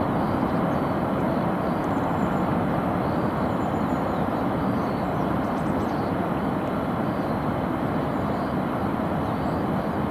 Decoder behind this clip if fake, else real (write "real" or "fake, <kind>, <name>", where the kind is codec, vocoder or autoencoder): real